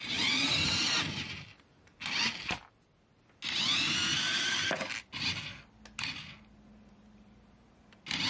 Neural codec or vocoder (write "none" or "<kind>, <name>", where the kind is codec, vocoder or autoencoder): none